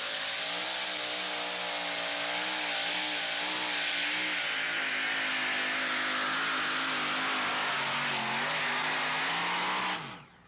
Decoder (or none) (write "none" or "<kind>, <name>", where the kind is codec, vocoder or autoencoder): none